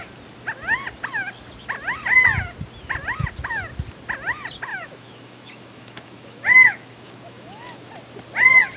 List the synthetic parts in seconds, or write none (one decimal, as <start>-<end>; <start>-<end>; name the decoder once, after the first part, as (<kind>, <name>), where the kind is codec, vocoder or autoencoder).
4.7-7.9 (autoencoder, DAC-VAE)